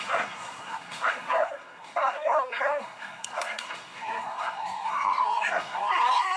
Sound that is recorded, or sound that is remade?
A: remade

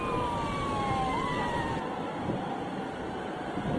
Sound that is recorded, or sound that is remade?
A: remade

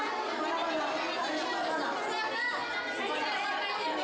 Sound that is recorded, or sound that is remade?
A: recorded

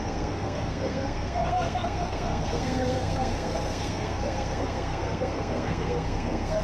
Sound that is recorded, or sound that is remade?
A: remade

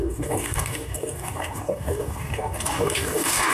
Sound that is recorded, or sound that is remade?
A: remade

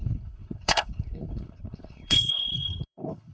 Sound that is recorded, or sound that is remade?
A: remade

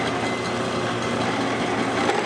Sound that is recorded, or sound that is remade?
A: recorded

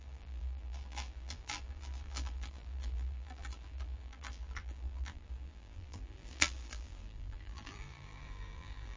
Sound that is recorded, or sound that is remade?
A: remade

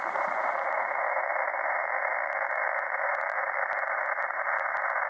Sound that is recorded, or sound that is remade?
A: remade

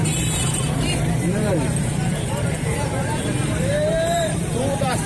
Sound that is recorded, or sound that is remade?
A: remade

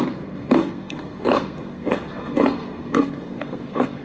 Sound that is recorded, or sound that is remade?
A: remade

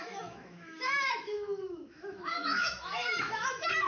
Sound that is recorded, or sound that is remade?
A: remade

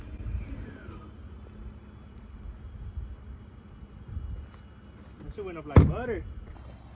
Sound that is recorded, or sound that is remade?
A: recorded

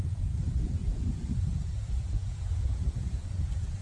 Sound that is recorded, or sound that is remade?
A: remade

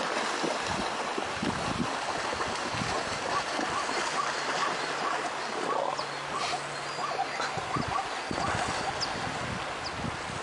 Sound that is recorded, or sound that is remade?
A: recorded